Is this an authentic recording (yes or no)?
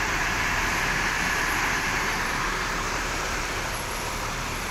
no